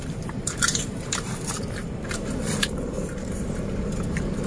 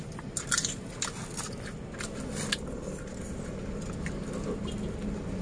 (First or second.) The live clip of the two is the second